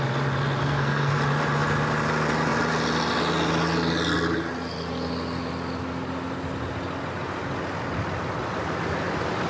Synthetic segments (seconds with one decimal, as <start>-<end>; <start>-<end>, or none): 0.6-1.2